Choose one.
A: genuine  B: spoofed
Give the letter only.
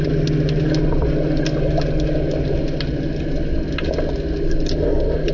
A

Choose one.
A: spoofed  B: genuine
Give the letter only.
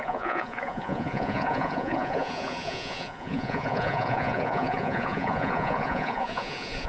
A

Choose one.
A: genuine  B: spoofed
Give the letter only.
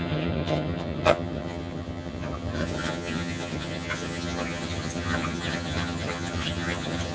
B